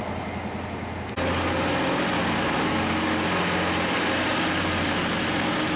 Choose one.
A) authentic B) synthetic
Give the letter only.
A